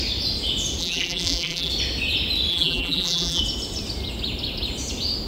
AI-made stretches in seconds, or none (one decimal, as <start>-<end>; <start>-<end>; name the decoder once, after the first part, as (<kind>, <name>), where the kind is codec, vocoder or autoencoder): 0.8-1.7 (vocoder, BigVGAN v2); 2.5-3.4